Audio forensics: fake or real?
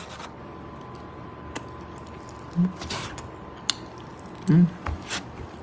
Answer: real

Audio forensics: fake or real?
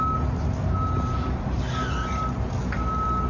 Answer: real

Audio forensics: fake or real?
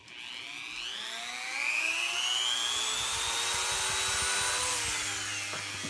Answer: real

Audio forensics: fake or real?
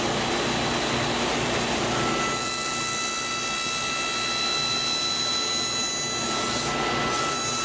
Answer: real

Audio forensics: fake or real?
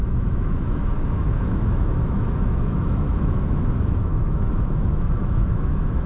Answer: fake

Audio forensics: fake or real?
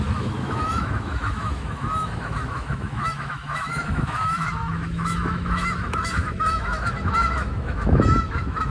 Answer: fake